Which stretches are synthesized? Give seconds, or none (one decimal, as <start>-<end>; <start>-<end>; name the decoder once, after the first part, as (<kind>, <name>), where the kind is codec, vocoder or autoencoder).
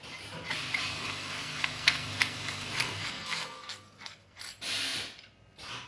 0.9-4.4 (codec, SNAC)